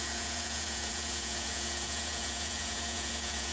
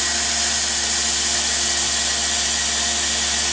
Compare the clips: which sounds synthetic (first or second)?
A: first